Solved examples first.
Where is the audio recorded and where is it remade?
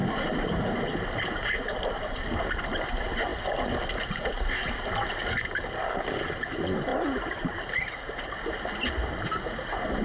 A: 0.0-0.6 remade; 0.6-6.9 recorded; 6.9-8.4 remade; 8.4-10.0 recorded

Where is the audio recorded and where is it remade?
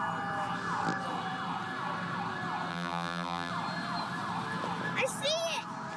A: 0.0-2.7 recorded; 2.7-3.5 remade; 3.5-6.0 recorded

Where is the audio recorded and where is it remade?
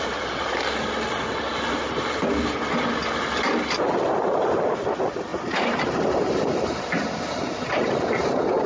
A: 0.0-5.3 recorded; 5.3-6.9 remade; 6.9-8.7 recorded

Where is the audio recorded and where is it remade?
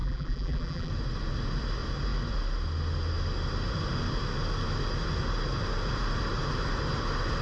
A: 0.0-0.9 remade; 0.9-7.4 recorded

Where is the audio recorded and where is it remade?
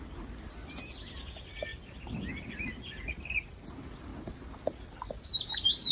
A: 0.0-1.7 remade; 1.7-3.5 recorded; 3.5-4.1 remade; 4.1-4.9 recorded; 4.9-5.9 remade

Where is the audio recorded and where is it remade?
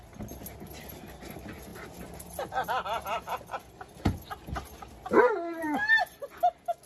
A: 0.0-6.9 recorded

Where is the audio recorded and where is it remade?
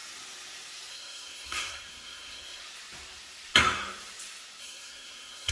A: 0.0-0.9 recorded; 0.9-2.6 remade; 2.6-4.6 recorded; 4.6-5.5 remade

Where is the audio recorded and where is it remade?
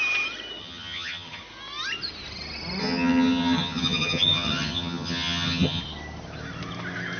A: 0.0-0.6 recorded; 0.6-1.4 remade; 1.4-2.8 recorded; 2.8-5.8 remade; 5.8-7.2 recorded